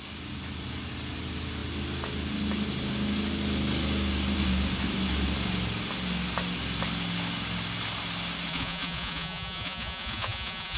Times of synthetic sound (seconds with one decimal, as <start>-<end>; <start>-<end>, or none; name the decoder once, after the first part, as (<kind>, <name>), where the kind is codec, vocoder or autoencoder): 8.5-10.8 (vocoder, Vocos)